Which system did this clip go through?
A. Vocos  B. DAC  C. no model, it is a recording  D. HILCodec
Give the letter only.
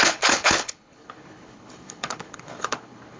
D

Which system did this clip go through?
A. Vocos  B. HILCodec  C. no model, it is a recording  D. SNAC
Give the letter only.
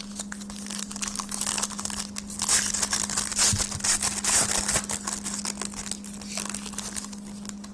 C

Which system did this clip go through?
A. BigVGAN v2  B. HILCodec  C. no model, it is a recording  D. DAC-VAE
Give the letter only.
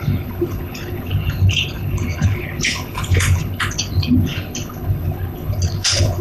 B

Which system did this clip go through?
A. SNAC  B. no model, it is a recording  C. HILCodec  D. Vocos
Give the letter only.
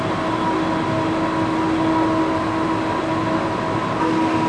B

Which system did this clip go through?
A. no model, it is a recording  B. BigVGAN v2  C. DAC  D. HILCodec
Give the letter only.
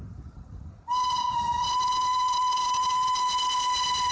A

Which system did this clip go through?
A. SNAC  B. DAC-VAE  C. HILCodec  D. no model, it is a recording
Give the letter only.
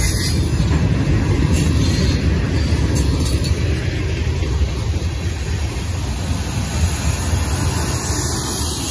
D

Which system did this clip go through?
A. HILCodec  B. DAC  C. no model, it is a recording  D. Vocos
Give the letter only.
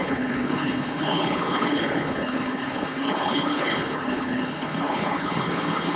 A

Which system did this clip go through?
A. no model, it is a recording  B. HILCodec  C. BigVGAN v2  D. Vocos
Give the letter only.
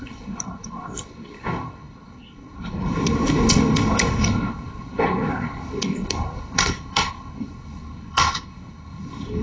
B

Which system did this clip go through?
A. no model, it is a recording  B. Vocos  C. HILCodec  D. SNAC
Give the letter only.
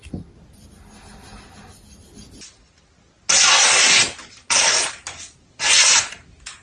A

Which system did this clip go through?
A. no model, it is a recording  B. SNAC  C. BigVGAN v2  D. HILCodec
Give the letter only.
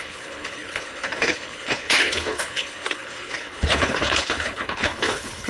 D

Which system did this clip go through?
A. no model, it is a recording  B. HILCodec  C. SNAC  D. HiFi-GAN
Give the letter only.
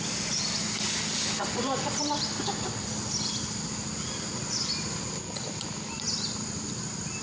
A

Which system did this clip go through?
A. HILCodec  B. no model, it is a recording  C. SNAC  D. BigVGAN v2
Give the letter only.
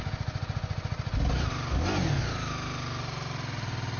B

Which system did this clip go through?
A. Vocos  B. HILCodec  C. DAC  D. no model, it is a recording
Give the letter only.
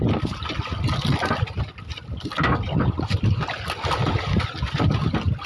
D